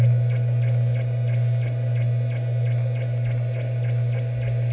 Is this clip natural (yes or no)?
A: yes